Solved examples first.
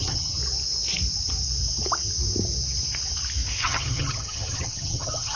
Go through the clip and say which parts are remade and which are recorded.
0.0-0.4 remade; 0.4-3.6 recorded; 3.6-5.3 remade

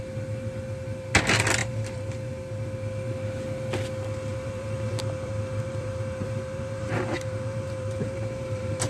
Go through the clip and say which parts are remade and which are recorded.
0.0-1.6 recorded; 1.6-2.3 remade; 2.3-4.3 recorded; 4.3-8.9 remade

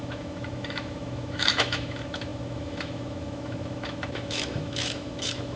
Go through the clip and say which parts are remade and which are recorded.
0.0-5.6 remade